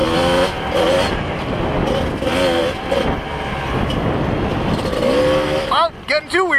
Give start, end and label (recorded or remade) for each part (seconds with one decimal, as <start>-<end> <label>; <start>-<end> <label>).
0.0-1.6 remade; 1.6-6.6 recorded